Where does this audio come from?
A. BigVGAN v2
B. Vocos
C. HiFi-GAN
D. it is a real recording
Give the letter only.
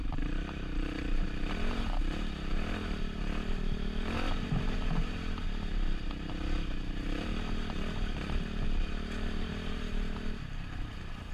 A